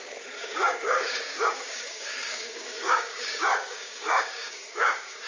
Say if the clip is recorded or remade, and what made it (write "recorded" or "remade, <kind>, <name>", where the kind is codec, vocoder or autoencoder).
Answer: remade, codec, DAC